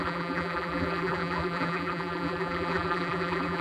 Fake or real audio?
fake